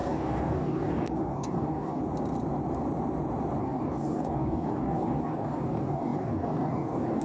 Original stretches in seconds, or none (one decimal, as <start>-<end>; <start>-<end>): 2.0-3.6